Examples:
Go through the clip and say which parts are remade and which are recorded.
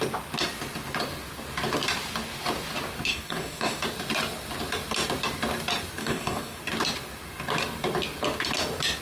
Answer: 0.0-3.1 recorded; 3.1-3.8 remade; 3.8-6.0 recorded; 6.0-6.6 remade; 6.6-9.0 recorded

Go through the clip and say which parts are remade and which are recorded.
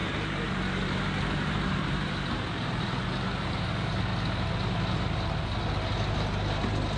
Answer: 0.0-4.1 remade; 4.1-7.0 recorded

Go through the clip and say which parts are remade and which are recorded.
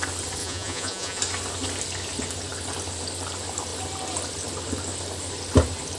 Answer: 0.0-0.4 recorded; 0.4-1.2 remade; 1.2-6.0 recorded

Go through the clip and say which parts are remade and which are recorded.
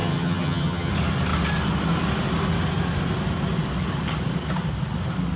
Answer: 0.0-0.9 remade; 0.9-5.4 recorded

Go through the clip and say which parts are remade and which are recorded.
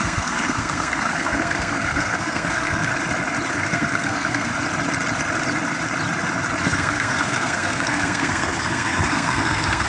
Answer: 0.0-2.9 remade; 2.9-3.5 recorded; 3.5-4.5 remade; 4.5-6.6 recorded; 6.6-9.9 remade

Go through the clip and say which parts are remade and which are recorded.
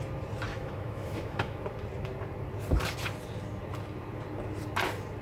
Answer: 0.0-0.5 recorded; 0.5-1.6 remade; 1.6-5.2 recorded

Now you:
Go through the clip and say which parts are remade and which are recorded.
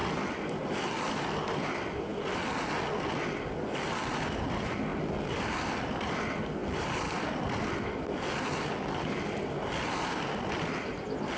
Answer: 0.0-11.4 recorded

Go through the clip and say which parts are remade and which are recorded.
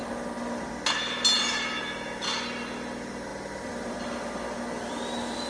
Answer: 0.0-5.5 recorded